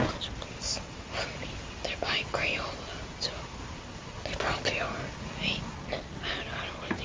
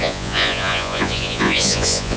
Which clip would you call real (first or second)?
first